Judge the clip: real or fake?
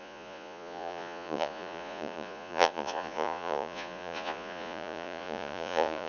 fake